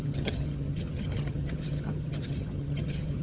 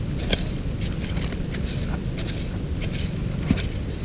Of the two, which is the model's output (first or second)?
first